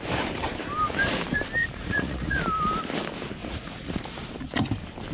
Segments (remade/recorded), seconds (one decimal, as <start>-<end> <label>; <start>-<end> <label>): 0.0-1.6 recorded; 1.6-2.4 remade; 2.4-3.4 recorded; 3.4-4.3 remade; 4.3-5.1 recorded